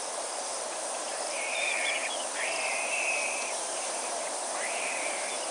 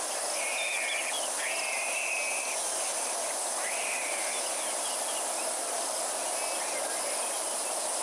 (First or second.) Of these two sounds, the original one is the second